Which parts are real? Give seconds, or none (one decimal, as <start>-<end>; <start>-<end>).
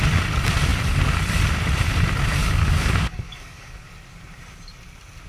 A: 0.0-2.4; 3.9-5.3